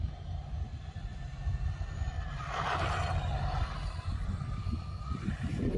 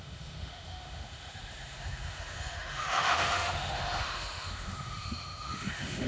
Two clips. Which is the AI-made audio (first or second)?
second